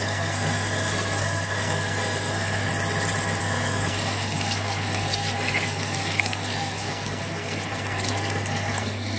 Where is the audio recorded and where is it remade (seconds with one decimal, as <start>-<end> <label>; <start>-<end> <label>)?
0.0-2.7 remade; 2.7-3.4 recorded; 3.4-9.2 remade